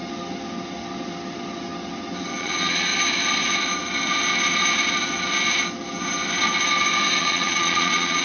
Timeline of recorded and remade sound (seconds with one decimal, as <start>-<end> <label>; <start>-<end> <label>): 0.0-2.4 recorded; 2.4-2.9 remade; 2.9-7.2 recorded; 7.2-8.2 remade